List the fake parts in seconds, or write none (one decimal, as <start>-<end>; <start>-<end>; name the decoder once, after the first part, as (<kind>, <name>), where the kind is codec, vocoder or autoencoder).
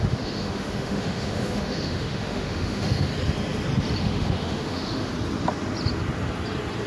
0.0-3.1 (autoencoder, DAC-VAE); 4.0-5.1